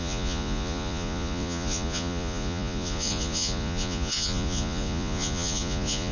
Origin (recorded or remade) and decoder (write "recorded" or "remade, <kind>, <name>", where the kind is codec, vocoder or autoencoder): remade, vocoder, Vocos